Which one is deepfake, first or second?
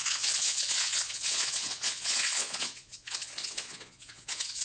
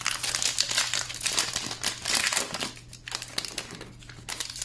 first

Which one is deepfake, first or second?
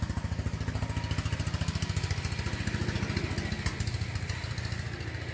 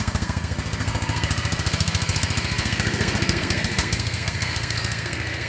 second